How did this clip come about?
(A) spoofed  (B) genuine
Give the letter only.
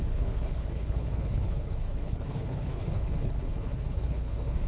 A